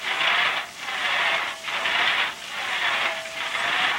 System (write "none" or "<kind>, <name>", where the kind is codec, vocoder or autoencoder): none